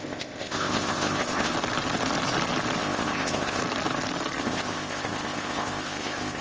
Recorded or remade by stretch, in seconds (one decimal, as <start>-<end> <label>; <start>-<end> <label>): 0.0-1.5 remade; 1.5-2.8 recorded; 2.8-3.6 remade; 3.6-4.4 recorded; 4.4-6.4 remade